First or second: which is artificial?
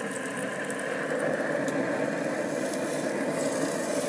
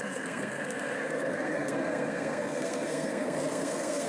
second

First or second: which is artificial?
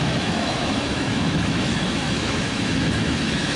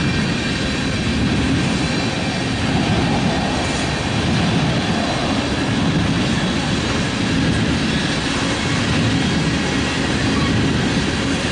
first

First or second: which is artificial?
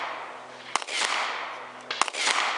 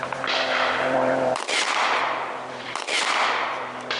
second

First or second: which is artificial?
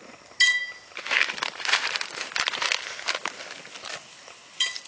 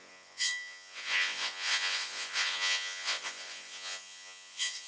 second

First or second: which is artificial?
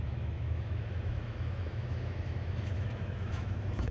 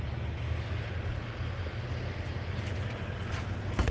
first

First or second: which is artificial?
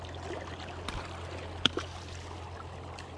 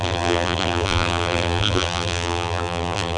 second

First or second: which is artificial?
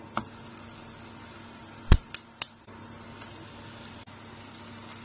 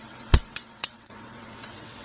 second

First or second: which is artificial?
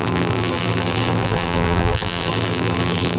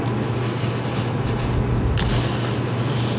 first